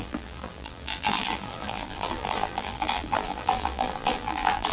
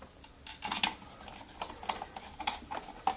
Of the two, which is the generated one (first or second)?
first